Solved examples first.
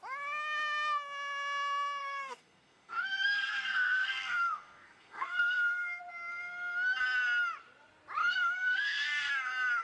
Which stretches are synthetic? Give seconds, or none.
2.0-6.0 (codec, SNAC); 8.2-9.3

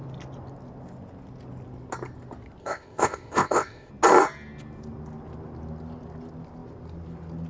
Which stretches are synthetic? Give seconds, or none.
2.6-3.9 (codec, ZipCodec)

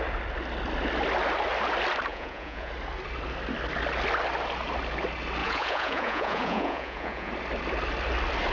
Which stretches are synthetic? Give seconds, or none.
2.1-2.7 (vocoder, Vocos); 5.4-7.3

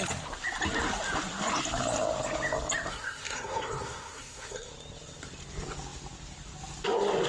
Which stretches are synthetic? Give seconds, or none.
2.9-4.7 (codec, SNAC)

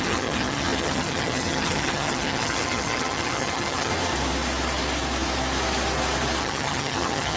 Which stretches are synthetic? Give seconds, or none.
0.0-3.9 (vocoder, HiFi-GAN); 6.4-7.4

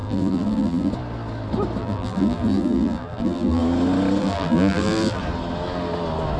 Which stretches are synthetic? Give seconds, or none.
0.0-0.9 (vocoder, BigVGAN v2); 1.8-3.6; 4.2-5.2